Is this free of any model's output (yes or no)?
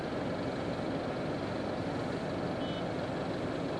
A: yes